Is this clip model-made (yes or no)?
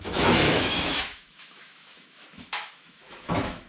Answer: yes